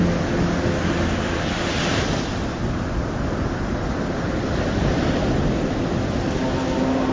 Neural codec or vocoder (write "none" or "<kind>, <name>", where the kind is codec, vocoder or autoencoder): none